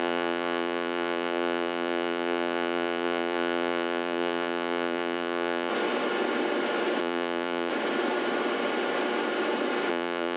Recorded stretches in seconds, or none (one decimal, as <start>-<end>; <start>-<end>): 5.7-7.0; 7.7-9.9